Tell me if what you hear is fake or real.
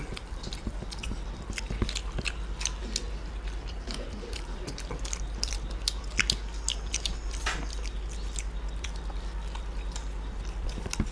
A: real